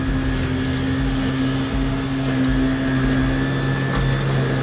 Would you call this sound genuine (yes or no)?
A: yes